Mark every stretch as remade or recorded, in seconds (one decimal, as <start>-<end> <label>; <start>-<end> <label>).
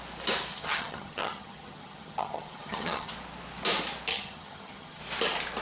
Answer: 0.0-0.5 recorded; 0.5-3.1 remade; 3.1-4.1 recorded; 4.1-5.0 remade; 5.0-5.6 recorded